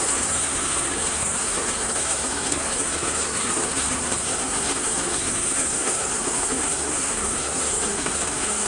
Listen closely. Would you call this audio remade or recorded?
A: remade